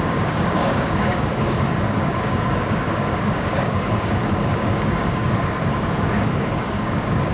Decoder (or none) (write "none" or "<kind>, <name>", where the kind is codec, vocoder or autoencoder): codec, DAC